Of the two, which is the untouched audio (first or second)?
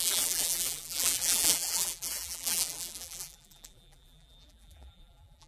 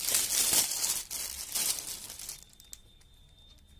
second